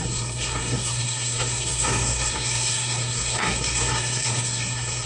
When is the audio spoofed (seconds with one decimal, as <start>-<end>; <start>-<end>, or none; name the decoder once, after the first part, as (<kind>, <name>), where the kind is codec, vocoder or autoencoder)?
0.0-5.1 (codec, SNAC)